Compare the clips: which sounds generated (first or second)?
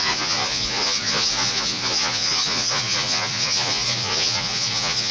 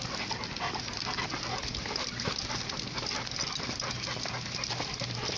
first